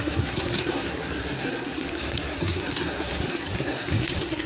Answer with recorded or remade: remade